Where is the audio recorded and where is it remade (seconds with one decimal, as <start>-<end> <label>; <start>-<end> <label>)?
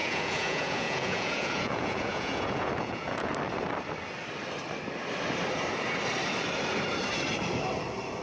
0.0-3.3 remade; 3.3-8.2 recorded